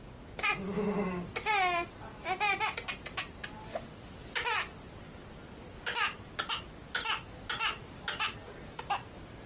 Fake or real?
real